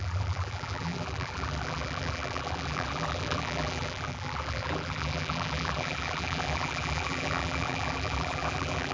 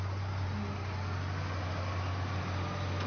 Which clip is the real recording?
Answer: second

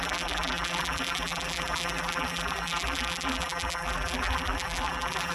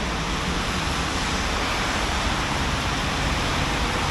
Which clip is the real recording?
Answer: second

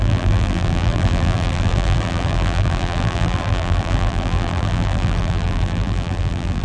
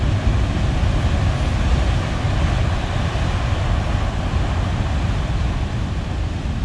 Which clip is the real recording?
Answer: second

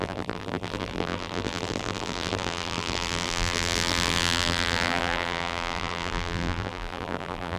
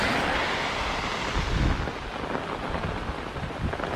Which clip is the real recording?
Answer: second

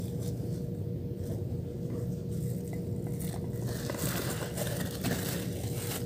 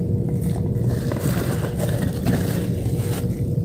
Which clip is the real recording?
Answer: first